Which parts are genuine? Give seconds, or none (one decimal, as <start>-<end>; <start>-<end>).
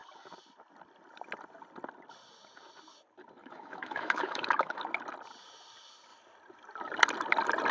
0.0-3.4; 4.8-7.7